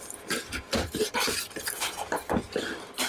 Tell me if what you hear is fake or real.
real